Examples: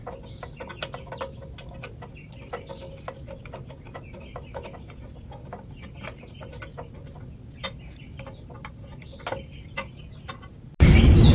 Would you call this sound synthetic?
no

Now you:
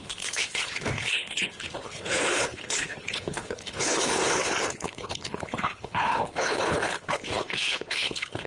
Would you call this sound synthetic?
yes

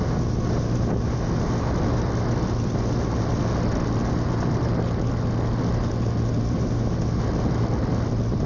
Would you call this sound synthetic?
no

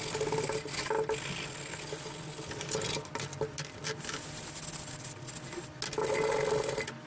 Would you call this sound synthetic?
no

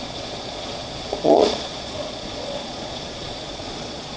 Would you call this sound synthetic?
yes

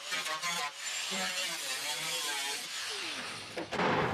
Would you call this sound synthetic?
yes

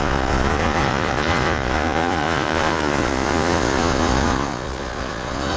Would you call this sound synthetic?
yes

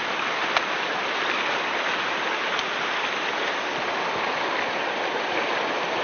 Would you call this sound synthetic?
no